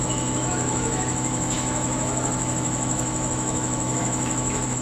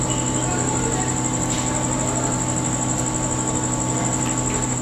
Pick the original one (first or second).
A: second